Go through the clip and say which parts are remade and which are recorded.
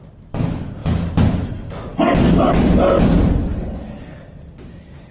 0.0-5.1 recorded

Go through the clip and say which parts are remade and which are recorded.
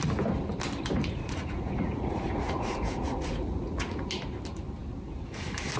0.0-1.0 recorded; 1.0-4.0 remade; 4.0-5.8 recorded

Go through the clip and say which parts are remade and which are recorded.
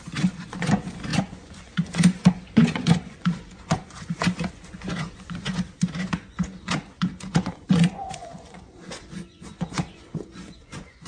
0.0-11.1 remade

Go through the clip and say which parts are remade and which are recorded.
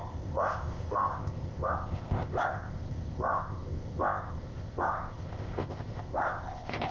0.0-6.9 remade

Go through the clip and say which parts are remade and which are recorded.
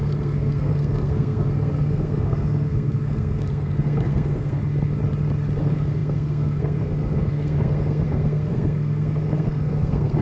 0.0-4.6 remade; 4.6-5.6 recorded; 5.6-10.2 remade